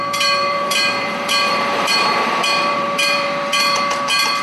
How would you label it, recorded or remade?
remade